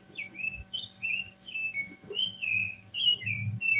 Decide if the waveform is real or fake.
fake